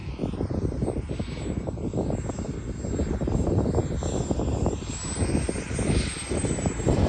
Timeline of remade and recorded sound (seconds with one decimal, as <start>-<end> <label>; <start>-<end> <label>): 0.0-7.1 recorded